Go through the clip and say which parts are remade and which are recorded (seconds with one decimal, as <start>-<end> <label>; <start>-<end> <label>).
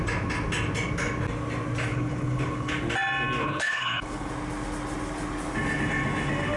0.0-1.9 recorded; 1.9-2.7 remade; 2.7-3.4 recorded; 3.4-4.3 remade; 4.3-6.6 recorded